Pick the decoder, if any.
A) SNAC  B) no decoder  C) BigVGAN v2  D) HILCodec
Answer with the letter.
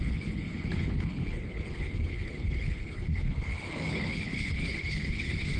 D